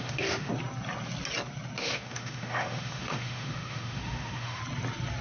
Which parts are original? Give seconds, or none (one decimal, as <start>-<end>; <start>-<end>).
0.5-1.8; 4.6-5.2